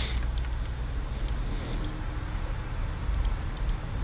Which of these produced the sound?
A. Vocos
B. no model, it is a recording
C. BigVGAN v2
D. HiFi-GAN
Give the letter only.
B